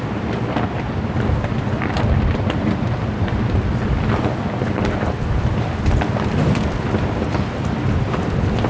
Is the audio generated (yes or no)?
no